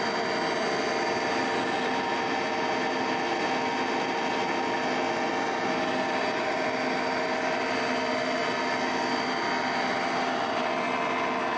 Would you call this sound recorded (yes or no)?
yes